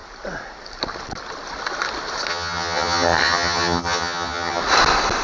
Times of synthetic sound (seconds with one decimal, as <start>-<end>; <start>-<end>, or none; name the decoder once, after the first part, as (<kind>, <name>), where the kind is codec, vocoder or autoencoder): 2.3-4.6 (vocoder, HiFi-GAN)

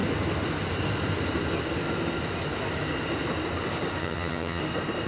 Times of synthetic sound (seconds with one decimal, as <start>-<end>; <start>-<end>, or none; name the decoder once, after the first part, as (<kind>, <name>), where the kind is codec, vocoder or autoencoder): 4.0-4.6 (vocoder, HiFi-GAN)

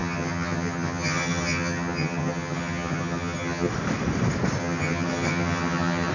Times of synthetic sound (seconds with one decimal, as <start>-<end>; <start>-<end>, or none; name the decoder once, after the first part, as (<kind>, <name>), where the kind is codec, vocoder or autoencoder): 0.0-3.7 (vocoder, HiFi-GAN); 4.6-6.1